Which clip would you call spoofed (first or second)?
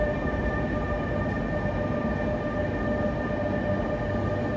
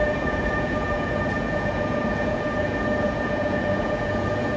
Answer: second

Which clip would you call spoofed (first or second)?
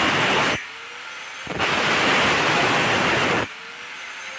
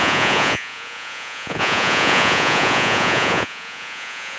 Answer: second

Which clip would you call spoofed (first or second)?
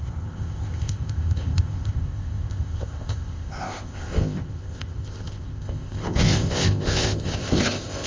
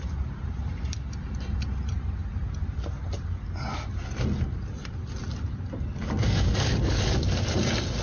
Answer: first